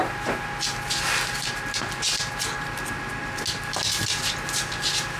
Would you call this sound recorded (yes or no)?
yes